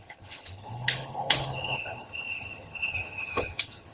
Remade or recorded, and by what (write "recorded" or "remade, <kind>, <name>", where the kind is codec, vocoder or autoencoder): remade, codec, HILCodec